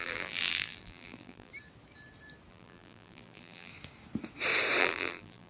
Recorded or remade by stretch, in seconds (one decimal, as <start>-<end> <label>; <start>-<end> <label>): 0.0-1.5 remade; 1.5-2.5 recorded; 2.5-3.7 remade; 3.7-4.8 recorded; 4.8-5.5 remade